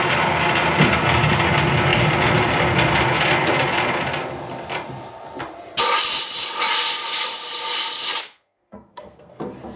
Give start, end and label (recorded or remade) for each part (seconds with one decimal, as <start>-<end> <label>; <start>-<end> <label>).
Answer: 0.0-8.2 recorded; 8.2-9.4 remade; 9.4-9.8 recorded